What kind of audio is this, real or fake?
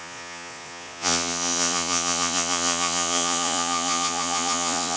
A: fake